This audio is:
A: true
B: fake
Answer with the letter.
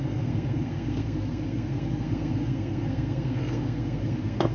B